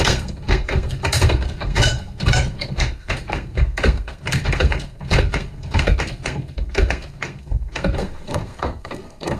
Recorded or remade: remade